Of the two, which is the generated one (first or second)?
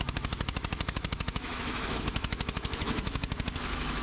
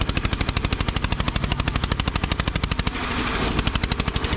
first